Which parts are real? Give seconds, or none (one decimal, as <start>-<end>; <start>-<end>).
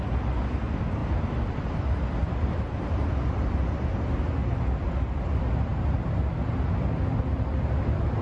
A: 0.0-1.0; 3.7-8.2